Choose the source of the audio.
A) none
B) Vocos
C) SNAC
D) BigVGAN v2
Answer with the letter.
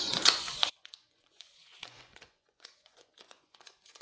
B